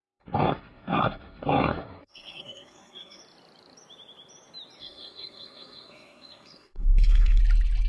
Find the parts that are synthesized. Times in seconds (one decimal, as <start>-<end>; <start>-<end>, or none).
0.0-3.2; 4.8-7.4